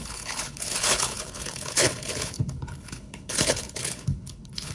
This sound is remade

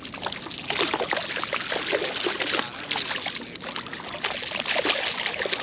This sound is recorded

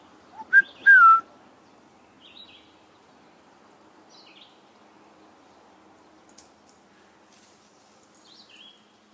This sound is recorded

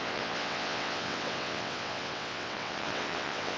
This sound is remade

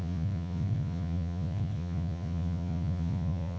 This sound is remade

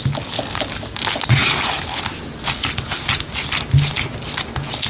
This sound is recorded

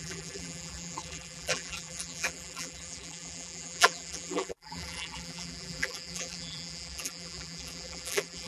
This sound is remade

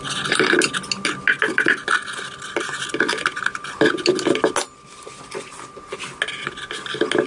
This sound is recorded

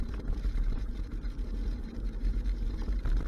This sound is remade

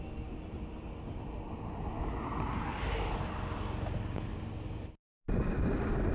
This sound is recorded